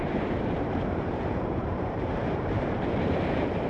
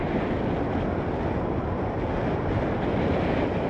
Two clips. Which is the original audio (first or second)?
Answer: second